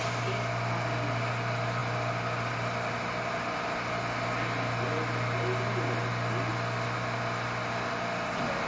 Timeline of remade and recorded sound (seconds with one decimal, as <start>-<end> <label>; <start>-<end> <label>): 0.0-8.7 recorded